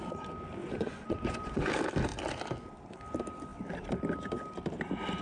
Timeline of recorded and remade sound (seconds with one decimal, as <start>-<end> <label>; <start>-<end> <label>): 0.0-0.6 recorded; 0.6-1.7 remade; 1.7-5.2 recorded